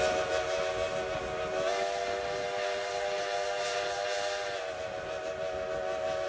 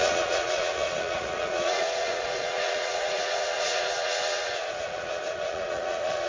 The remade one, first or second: second